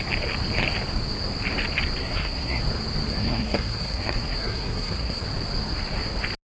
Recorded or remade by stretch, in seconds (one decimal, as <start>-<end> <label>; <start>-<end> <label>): 0.0-2.0 recorded; 2.0-2.6 remade; 2.6-3.1 recorded; 3.1-5.2 remade; 5.2-6.5 recorded